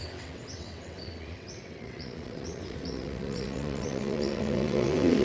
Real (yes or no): no